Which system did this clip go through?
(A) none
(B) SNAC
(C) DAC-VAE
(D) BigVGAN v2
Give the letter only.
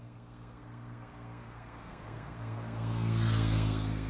B